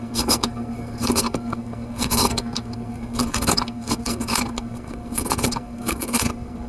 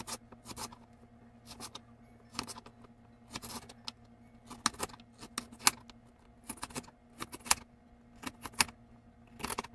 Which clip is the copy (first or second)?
first